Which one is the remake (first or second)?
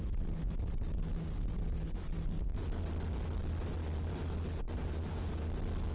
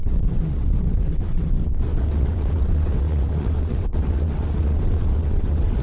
second